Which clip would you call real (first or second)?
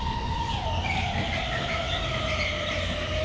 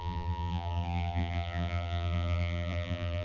first